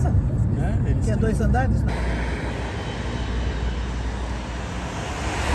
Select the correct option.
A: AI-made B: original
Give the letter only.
B